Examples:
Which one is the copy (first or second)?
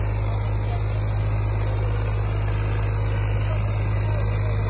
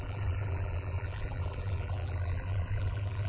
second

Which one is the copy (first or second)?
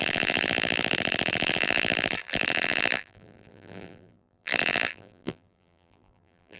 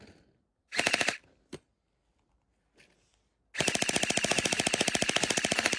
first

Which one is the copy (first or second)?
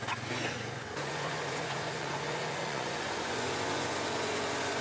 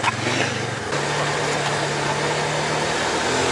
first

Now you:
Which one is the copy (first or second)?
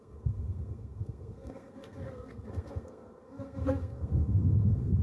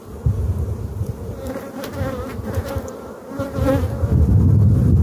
first